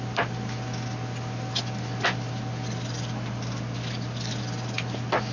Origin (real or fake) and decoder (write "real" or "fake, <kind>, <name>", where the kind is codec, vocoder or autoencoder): real